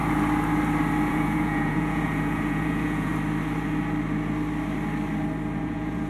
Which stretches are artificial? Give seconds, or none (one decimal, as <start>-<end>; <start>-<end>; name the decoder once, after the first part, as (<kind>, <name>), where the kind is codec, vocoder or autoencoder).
1.1-3.1 (vocoder, Vocos); 5.6-6.1